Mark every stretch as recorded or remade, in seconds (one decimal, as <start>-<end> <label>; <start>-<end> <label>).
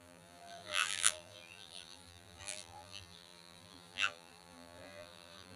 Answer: 0.0-5.6 remade